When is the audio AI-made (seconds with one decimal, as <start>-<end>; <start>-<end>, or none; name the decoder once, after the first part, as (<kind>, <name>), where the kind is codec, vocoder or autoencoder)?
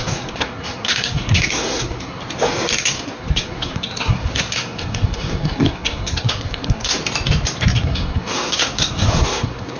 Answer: 0.0-2.2 (codec, SNAC); 2.8-7.0; 7.7-9.8